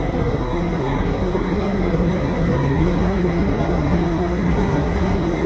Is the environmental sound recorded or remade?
remade